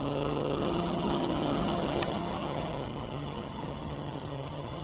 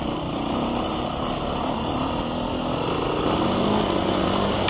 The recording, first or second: second